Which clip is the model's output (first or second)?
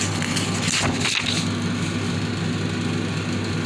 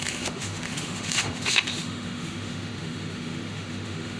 second